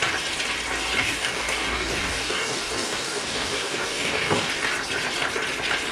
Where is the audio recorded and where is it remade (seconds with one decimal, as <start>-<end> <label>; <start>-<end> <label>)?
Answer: 0.0-1.0 recorded; 1.0-4.5 remade; 4.5-5.9 recorded